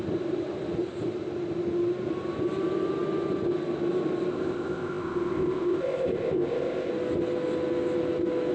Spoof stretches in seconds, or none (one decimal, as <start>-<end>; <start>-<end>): 4.3-6.9